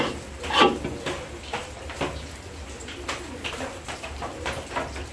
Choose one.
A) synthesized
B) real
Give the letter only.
B